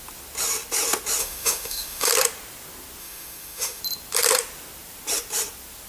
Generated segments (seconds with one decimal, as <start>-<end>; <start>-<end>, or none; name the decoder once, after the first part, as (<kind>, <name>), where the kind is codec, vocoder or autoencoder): 1.2-2.1 (autoencoder, DAC-VAE); 3.0-3.8